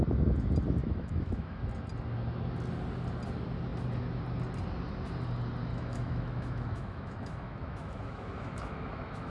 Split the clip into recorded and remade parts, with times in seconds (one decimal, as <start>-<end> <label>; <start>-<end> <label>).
0.0-0.8 recorded; 0.8-1.6 remade; 1.6-5.7 recorded; 5.7-9.3 remade